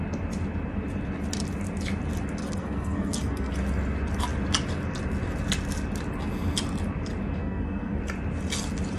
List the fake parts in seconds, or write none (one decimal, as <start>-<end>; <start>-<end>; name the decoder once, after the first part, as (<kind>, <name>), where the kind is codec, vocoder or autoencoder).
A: 2.4-3.5 (codec, SNAC); 7.4-8.0